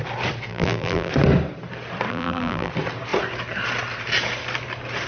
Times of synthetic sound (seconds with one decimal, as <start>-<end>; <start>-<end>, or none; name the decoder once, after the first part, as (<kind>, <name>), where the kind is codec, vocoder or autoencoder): 0.5-1.1 (vocoder, BigVGAN v2); 2.1-2.7